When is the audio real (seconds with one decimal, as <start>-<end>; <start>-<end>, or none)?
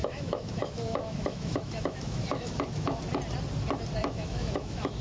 3.0-4.0